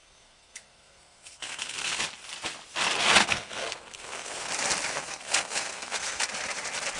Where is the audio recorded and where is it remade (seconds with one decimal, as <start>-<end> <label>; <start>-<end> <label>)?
0.0-2.0 remade; 2.0-3.2 recorded; 3.2-4.5 remade; 4.5-4.9 recorded; 4.9-6.2 remade; 6.2-7.0 recorded